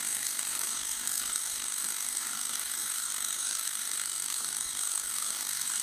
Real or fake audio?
fake